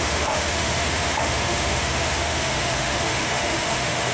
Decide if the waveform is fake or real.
fake